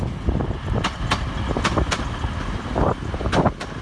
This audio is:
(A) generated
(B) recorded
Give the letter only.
B